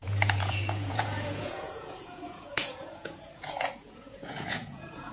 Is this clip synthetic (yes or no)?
yes